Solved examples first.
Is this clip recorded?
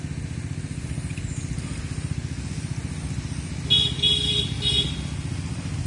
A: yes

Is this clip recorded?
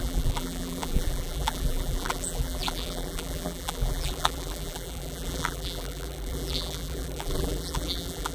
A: no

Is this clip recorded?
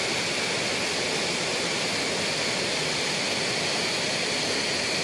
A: yes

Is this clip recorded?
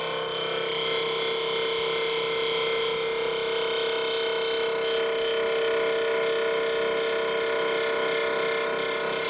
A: yes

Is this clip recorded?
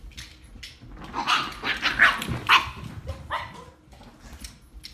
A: yes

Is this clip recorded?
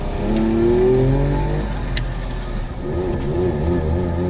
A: yes